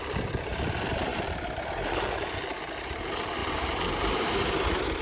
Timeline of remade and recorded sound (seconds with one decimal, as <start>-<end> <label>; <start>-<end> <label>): 0.0-3.4 recorded; 3.4-4.5 remade; 4.5-5.0 recorded

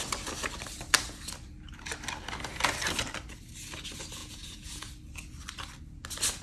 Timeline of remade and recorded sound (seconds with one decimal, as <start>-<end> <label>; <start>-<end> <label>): 0.0-4.2 recorded; 4.2-4.9 remade; 4.9-6.4 recorded

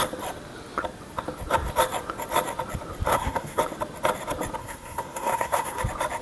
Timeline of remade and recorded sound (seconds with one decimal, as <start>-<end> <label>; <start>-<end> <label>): 0.0-3.1 recorded; 3.1-3.6 remade; 3.6-4.6 recorded; 4.6-5.8 remade; 5.8-6.2 recorded

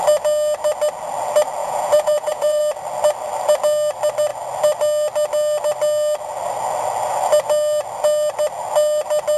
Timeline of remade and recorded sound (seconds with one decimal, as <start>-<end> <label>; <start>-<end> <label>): 0.0-1.6 recorded; 1.6-2.6 remade; 2.6-9.4 recorded

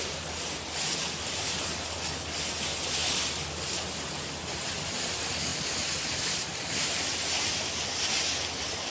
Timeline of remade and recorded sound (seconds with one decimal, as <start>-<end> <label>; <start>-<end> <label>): 0.0-8.9 recorded